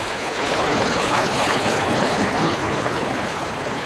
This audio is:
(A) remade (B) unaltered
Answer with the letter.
A